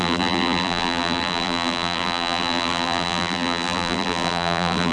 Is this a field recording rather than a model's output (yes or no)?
no